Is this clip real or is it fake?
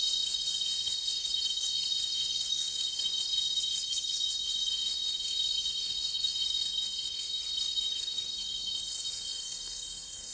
fake